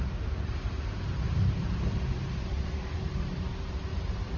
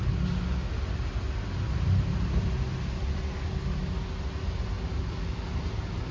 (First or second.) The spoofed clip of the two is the first